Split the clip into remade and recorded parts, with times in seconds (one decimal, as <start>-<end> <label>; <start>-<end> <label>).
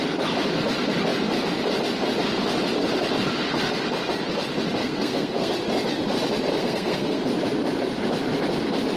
0.0-4.8 recorded; 4.8-5.5 remade; 5.5-6.5 recorded; 6.5-7.2 remade; 7.2-9.0 recorded